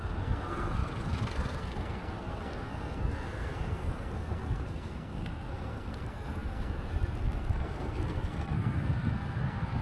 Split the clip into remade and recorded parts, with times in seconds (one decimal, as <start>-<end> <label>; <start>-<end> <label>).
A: 0.0-9.8 remade